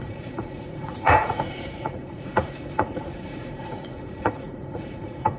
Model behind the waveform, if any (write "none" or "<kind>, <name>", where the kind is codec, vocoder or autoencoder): vocoder, Vocos